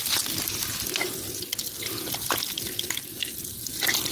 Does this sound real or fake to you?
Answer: real